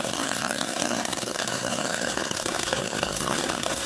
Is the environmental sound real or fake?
fake